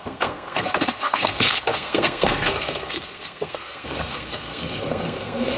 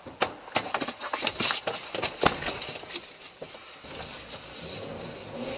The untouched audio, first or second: second